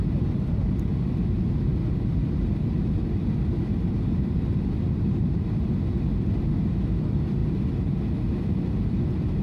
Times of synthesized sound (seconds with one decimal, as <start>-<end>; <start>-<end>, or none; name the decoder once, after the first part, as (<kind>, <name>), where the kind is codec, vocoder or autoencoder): 0.0-0.8 (vocoder, BigVGAN v2); 1.7-4.5